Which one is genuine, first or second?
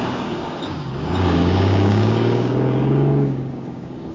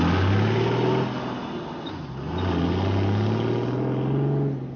second